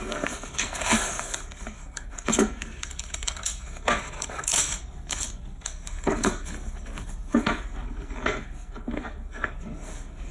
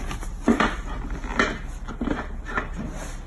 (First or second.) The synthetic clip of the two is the first